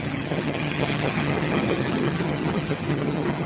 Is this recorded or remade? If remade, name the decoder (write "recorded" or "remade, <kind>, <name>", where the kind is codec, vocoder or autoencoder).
remade, vocoder, HiFi-GAN